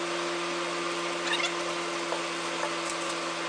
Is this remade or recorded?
recorded